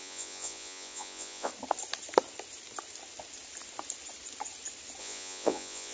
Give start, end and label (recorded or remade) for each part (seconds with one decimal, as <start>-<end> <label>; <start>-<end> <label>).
0.0-1.5 remade; 1.5-5.0 recorded; 5.0-5.9 remade